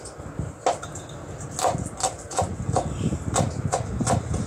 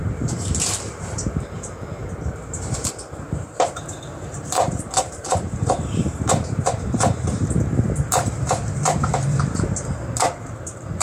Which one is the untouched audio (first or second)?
first